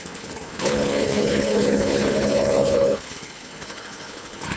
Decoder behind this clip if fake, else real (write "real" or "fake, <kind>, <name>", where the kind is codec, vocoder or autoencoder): fake, codec, HILCodec